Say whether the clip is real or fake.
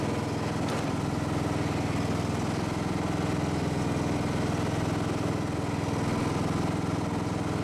real